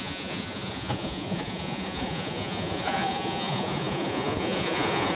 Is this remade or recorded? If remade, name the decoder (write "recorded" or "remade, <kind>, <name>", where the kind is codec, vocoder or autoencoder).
remade, vocoder, Vocos